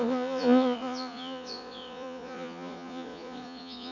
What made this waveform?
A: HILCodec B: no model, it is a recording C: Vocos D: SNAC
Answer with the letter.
C